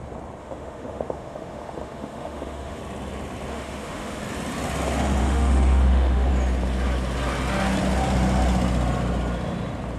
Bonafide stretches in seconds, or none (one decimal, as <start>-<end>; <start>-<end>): 0.0-0.4; 2.8-3.5; 4.2-5.2; 6.3-10.0